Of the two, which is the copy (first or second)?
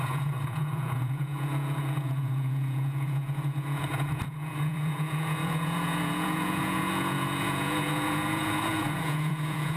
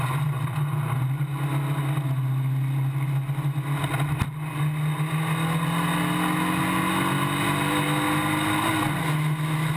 first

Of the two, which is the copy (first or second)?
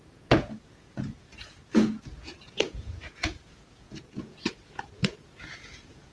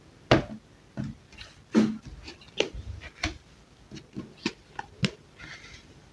first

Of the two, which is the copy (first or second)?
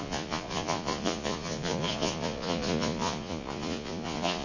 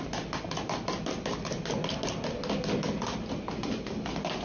first